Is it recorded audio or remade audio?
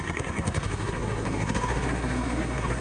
remade